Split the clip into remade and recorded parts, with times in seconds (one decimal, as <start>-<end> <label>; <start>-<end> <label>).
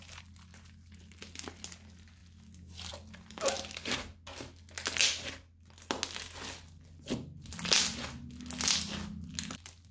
0.0-9.9 recorded